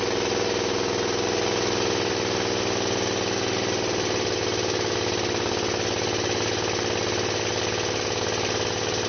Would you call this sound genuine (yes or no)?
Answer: yes